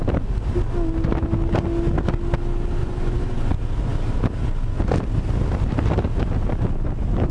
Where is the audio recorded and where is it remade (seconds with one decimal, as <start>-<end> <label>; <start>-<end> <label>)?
0.0-2.8 recorded; 2.8-3.5 remade; 3.5-7.3 recorded